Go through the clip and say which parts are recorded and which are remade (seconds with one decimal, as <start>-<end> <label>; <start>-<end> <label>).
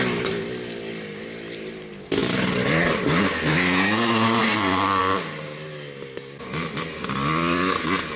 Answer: 0.0-8.2 recorded